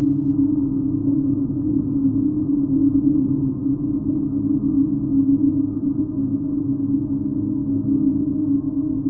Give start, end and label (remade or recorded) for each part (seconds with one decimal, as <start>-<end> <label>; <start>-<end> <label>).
0.0-1.1 recorded; 1.1-4.1 remade; 4.1-5.5 recorded; 5.5-6.0 remade; 6.0-9.1 recorded